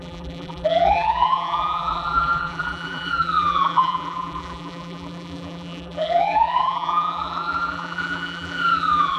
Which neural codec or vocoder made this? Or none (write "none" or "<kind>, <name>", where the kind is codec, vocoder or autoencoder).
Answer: vocoder, BigVGAN v2